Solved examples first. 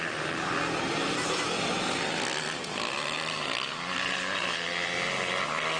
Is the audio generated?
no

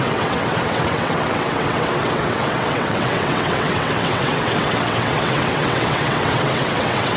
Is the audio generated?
yes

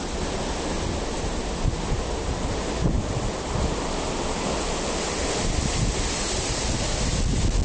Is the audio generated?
no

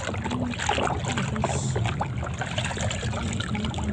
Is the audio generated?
no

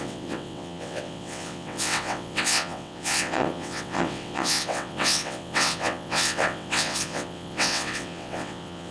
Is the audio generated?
yes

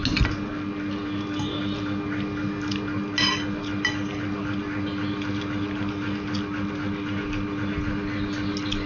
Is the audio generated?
no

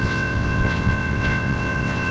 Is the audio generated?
yes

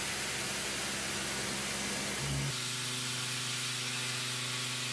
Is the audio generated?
no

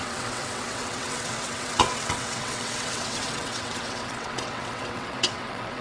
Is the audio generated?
yes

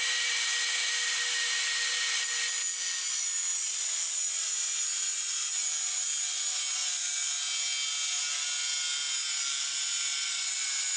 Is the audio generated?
no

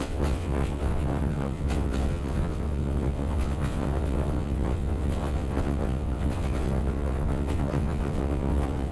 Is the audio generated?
yes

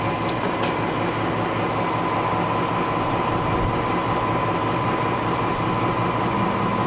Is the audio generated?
no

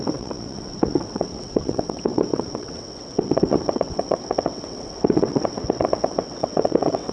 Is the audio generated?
yes